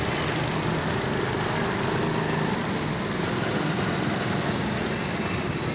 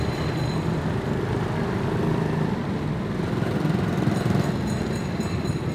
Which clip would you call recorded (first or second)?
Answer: first